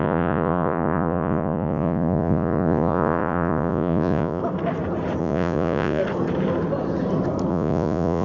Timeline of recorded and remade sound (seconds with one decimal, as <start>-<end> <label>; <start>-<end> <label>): 0.0-4.4 remade; 4.4-5.2 recorded; 5.2-6.0 remade; 6.0-7.5 recorded; 7.5-8.2 remade